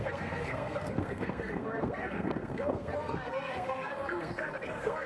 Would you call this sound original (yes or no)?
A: no